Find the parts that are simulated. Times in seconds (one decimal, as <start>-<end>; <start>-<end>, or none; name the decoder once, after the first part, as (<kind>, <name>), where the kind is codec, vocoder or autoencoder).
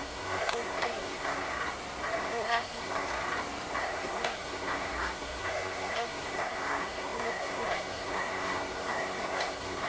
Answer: 0.0-1.5 (codec, SNAC); 2.2-3.1; 3.8-9.9